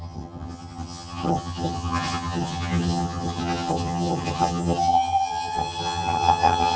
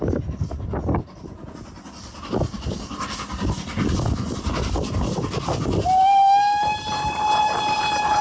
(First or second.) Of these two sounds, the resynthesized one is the first